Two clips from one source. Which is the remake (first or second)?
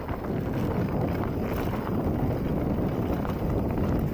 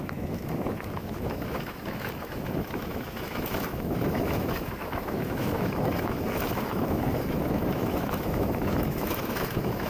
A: second